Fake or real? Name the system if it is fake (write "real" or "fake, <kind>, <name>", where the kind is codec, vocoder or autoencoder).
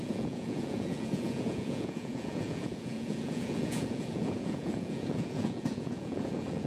fake, vocoder, Vocos